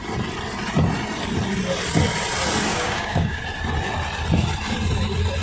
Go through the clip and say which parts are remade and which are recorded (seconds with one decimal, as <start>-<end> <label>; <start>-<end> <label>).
0.0-2.7 recorded; 2.7-3.4 remade; 3.4-5.4 recorded